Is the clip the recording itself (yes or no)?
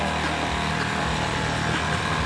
yes